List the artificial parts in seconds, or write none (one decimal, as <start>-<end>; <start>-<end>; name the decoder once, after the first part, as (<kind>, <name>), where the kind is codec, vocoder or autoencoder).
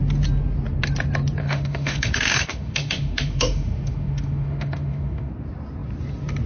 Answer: 1.4-5.3 (autoencoder, DAC-VAE)